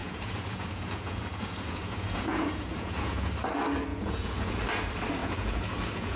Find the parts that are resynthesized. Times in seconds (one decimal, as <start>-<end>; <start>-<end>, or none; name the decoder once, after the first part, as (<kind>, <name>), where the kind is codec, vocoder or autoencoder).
0.0-3.3 (vocoder, Vocos); 3.9-4.6; 5.2-6.2